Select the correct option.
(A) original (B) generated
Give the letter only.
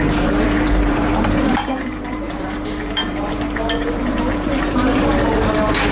B